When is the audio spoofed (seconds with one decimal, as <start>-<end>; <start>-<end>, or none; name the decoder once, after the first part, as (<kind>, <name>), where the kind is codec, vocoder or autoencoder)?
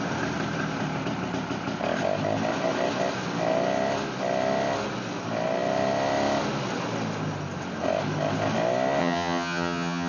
9.0-10.1 (vocoder, HiFi-GAN)